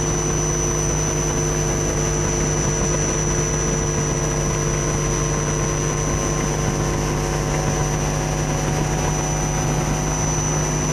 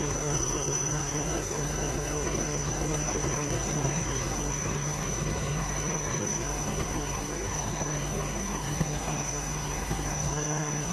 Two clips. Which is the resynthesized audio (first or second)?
second